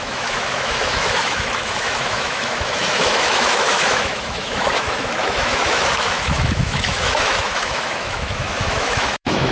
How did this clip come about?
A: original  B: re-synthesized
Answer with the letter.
B